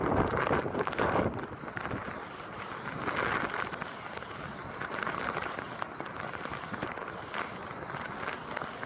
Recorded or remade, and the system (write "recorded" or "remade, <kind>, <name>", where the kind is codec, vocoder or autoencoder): recorded